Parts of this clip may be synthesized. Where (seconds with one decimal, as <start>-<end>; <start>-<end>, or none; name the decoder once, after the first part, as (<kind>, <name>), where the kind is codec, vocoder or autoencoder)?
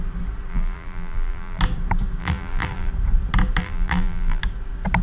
0.5-1.6 (vocoder, BigVGAN v2); 2.2-2.9; 3.6-4.4